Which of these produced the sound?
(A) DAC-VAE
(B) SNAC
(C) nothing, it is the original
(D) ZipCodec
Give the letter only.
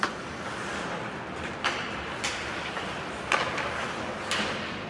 C